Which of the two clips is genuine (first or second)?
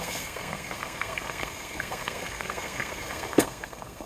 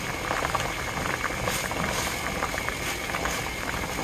second